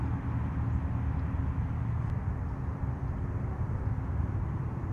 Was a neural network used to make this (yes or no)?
yes